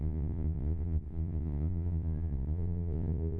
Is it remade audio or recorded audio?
remade